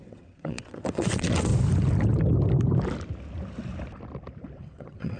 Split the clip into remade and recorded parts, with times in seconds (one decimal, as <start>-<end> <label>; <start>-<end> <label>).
0.0-1.5 remade; 1.5-4.6 recorded; 4.6-5.2 remade